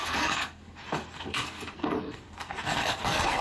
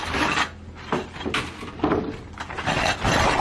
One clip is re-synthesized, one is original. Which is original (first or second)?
second